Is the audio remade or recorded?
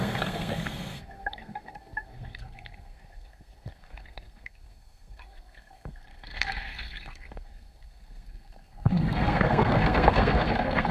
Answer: remade